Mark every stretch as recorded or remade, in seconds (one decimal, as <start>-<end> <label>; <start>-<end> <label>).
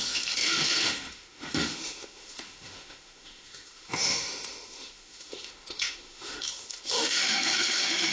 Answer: 0.0-8.1 remade